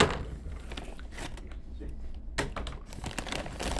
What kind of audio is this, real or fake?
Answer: real